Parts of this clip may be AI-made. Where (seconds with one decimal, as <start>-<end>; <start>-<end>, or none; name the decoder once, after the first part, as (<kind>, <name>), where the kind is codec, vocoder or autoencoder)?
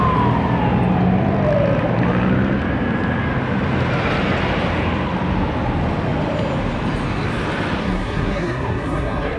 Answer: 7.8-9.4 (codec, SNAC)